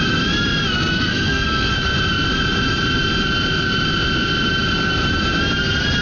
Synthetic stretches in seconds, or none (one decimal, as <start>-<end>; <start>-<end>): 0.9-1.7